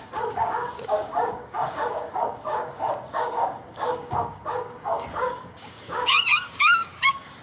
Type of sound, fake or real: fake